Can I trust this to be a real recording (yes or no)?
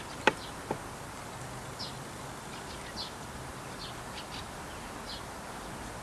yes